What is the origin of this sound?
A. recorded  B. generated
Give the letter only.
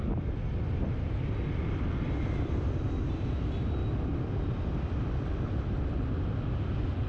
A